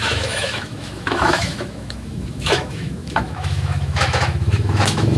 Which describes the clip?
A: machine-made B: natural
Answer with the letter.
A